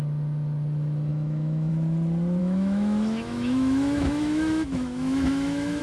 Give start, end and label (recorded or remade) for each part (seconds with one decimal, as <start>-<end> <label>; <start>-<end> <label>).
0.0-1.1 recorded; 1.1-1.7 remade; 1.7-2.4 recorded; 2.4-5.8 remade